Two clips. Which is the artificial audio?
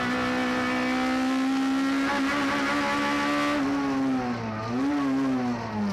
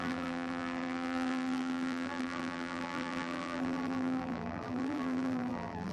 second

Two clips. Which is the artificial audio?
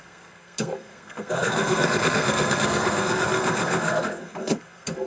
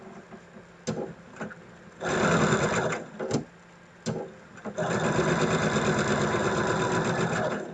first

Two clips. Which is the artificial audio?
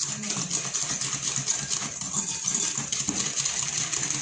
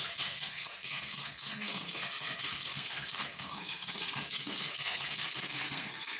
second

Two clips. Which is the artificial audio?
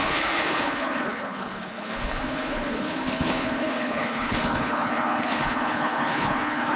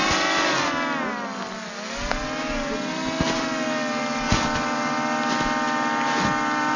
first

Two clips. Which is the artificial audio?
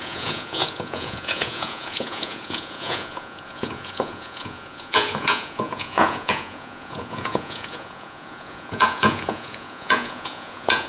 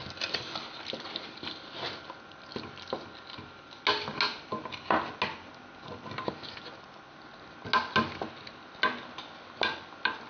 first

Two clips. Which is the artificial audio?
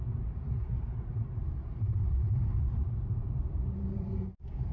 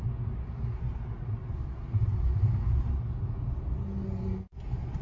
first